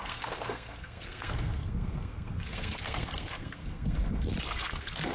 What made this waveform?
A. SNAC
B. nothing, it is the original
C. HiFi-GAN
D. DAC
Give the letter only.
A